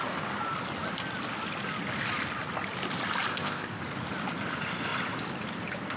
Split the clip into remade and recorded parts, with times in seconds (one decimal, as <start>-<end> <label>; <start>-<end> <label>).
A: 0.0-3.3 recorded; 3.3-3.8 remade; 3.8-6.0 recorded